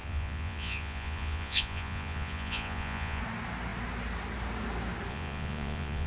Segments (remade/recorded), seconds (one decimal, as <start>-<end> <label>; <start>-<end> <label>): 0.0-3.2 remade; 3.2-5.1 recorded; 5.1-6.1 remade

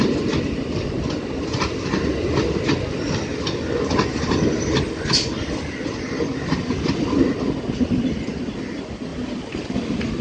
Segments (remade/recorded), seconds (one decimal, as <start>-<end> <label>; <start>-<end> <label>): 0.0-10.2 recorded

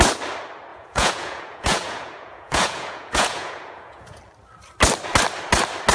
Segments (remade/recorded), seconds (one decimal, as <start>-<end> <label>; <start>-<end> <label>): 0.0-0.7 recorded; 0.7-4.2 remade; 4.2-5.9 recorded

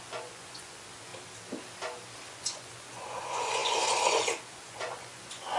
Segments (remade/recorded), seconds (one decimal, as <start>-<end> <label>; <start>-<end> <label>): 0.0-1.1 remade; 1.1-2.3 recorded; 2.3-5.6 remade

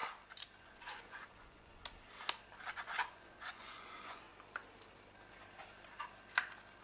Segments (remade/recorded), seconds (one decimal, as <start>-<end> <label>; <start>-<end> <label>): 0.0-0.6 recorded; 0.6-1.8 remade; 1.8-2.7 recorded; 2.7-4.3 remade; 4.3-6.8 recorded

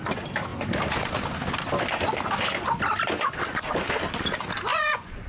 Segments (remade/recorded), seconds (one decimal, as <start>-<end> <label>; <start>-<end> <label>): 0.0-4.7 recorded; 4.7-5.3 remade

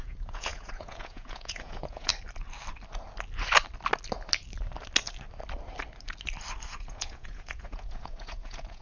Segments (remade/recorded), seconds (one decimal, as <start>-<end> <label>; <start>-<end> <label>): 0.0-2.1 remade; 2.1-6.7 recorded; 6.7-8.8 remade